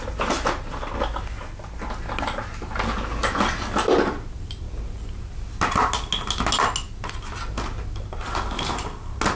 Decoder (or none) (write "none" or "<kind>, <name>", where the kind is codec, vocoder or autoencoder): none